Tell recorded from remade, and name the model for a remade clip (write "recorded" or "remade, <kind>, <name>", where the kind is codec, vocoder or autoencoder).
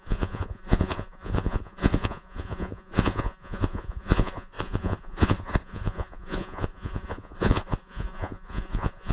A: remade, vocoder, Vocos